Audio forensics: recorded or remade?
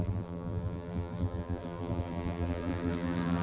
remade